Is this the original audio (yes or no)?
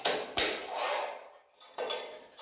yes